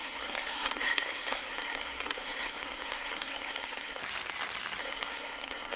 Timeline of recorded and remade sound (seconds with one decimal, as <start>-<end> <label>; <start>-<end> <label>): 0.0-4.0 remade; 4.0-4.8 recorded; 4.8-5.8 remade